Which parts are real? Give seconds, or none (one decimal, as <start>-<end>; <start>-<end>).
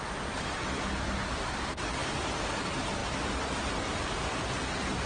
0.0-5.1